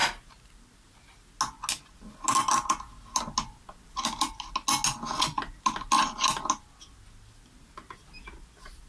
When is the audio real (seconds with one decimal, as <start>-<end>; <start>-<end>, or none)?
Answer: 0.0-8.9